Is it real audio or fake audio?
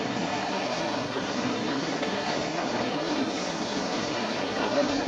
fake